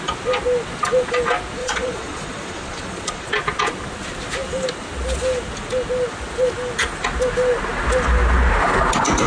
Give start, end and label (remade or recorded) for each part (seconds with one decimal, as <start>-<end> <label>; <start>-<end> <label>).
0.0-1.6 recorded; 1.6-3.3 remade; 3.3-9.3 recorded